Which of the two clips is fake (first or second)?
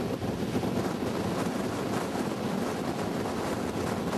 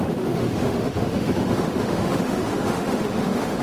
second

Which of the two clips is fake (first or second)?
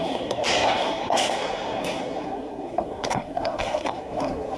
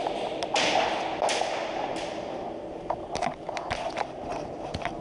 first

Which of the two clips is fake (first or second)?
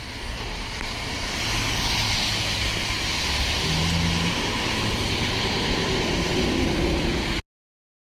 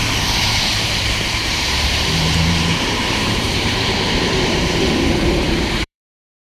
second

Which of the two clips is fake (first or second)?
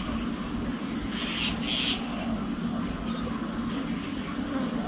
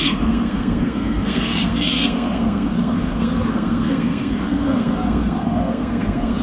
second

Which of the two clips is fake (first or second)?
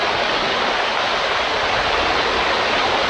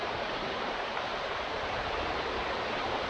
second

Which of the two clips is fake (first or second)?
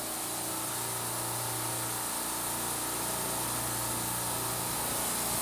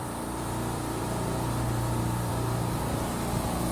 second